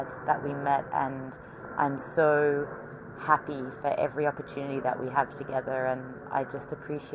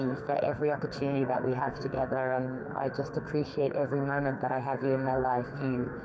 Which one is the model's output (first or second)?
second